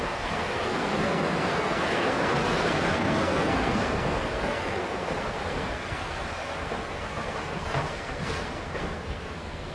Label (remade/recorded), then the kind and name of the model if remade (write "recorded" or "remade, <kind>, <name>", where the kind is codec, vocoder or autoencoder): remade, codec, SNAC